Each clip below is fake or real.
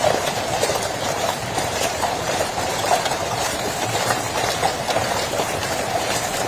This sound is fake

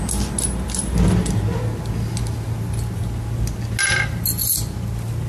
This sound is real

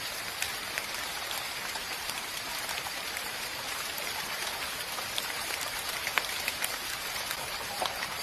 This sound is fake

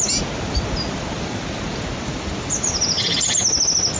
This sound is real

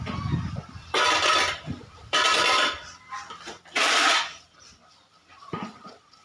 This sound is fake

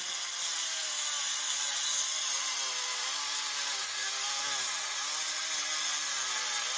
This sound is real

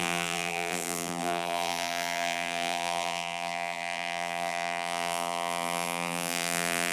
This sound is fake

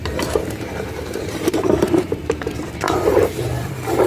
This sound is fake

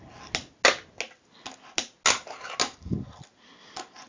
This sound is real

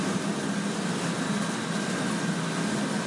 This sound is real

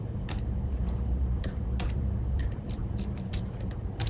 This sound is fake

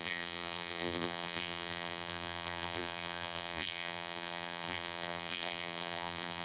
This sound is fake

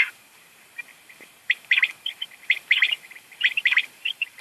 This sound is fake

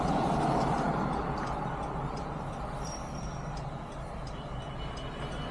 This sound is fake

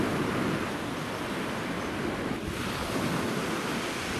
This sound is real